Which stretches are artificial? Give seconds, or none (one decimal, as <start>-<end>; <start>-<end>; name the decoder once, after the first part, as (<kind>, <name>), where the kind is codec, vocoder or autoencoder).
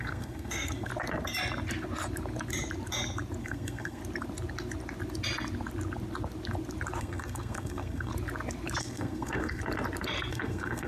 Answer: 0.0-0.9 (codec, SNAC); 3.4-4.0; 7.0-8.1; 8.8-9.6; 10.3-10.9